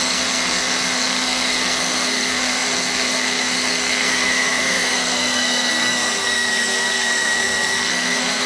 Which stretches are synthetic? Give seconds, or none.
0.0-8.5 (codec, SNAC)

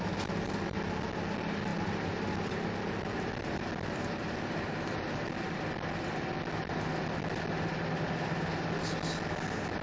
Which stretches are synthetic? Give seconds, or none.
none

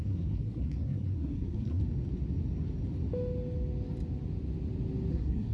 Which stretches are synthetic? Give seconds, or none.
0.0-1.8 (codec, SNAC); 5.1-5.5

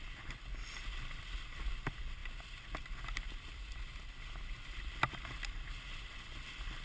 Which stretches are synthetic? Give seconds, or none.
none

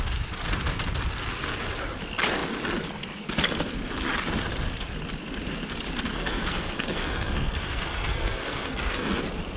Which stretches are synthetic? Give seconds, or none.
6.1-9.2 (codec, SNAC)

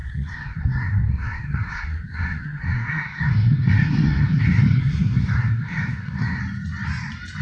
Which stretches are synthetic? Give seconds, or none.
0.0-6.4 (codec, SNAC)

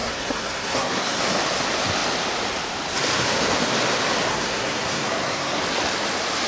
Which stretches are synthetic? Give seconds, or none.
0.0-1.2 (codec, SNAC); 4.3-5.6